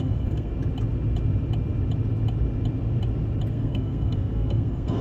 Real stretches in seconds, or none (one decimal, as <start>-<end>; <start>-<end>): 0.5-3.5